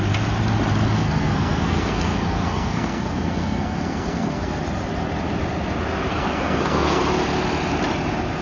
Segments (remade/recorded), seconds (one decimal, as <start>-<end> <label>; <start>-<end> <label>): 0.0-1.0 recorded; 1.0-4.6 remade; 4.6-6.1 recorded; 6.1-7.0 remade; 7.0-8.4 recorded